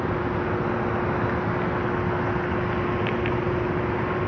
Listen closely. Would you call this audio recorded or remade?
recorded